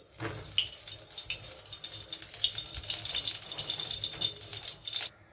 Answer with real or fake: real